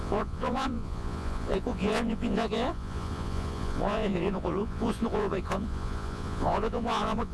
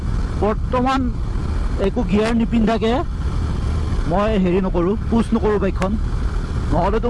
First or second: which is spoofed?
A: first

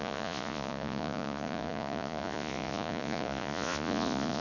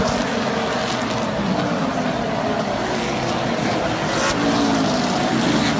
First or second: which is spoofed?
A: first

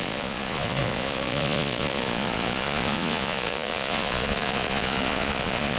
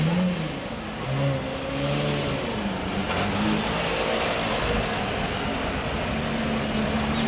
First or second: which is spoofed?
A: first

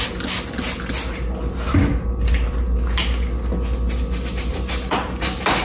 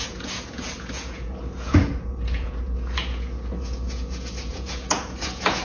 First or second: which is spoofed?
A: second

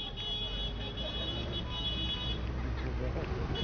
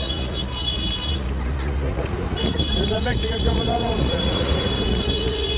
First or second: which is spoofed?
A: second